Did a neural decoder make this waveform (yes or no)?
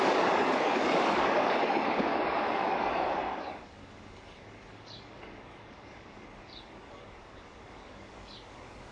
yes